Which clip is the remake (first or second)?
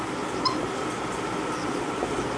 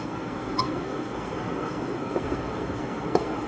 second